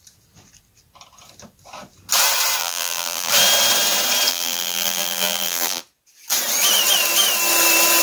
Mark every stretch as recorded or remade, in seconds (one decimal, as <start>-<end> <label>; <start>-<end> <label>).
0.0-2.6 recorded; 2.6-3.3 remade; 3.3-4.3 recorded; 4.3-5.8 remade; 5.8-8.0 recorded